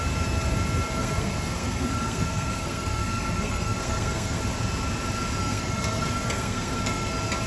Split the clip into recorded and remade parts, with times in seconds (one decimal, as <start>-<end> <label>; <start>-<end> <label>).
0.0-1.0 recorded; 1.0-4.4 remade; 4.4-5.4 recorded; 5.4-7.1 remade; 7.1-7.5 recorded